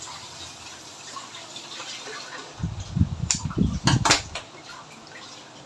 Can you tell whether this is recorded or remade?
recorded